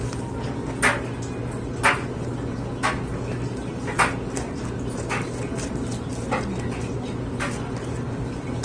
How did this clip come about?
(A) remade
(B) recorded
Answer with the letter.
B